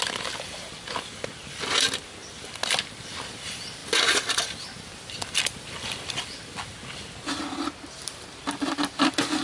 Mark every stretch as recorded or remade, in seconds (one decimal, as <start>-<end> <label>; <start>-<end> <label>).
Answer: 0.0-3.8 recorded; 3.8-6.6 remade; 6.6-9.4 recorded